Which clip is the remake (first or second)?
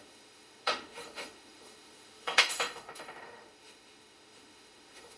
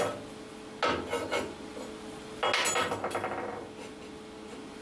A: first